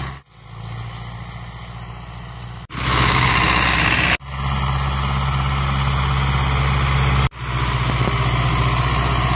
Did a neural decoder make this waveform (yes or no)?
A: no